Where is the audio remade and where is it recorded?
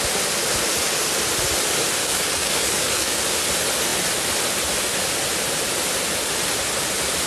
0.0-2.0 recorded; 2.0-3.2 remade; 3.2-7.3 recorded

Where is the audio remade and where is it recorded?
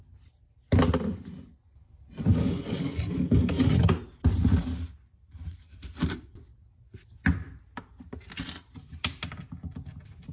0.0-2.3 recorded; 2.3-3.7 remade; 3.7-10.3 recorded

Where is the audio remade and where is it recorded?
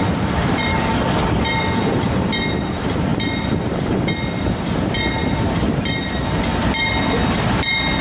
0.0-0.7 recorded; 0.7-1.4 remade; 1.4-8.0 recorded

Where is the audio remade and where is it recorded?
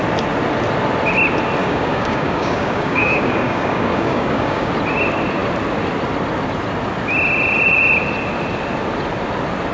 0.0-1.6 recorded; 1.6-4.7 remade; 4.7-9.7 recorded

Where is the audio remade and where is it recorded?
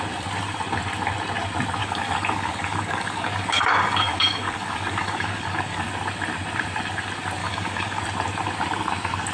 0.0-1.8 recorded; 1.8-5.9 remade; 5.9-7.4 recorded; 7.4-8.0 remade; 8.0-9.3 recorded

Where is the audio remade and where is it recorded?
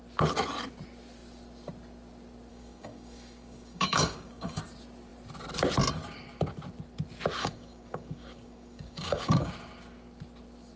0.0-2.5 recorded; 2.5-4.6 remade; 4.6-7.4 recorded; 7.4-9.5 remade; 9.5-10.8 recorded